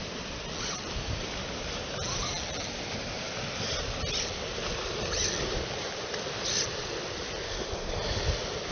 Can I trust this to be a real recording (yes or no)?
yes